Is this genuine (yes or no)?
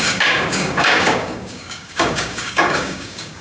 no